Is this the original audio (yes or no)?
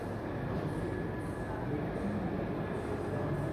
yes